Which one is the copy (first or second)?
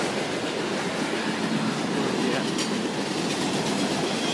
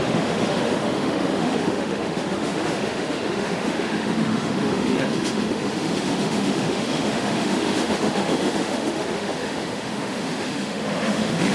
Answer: second